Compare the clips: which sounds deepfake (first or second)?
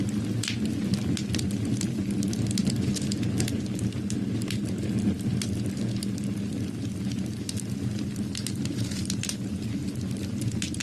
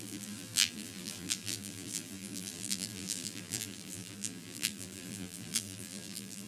second